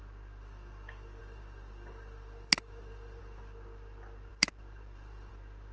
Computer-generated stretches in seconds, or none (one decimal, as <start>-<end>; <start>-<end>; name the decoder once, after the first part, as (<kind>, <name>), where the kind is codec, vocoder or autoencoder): 1.2-3.2 (vocoder, BigVGAN v2); 4.3-5.3